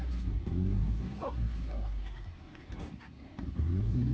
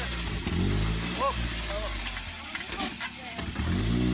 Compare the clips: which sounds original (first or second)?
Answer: second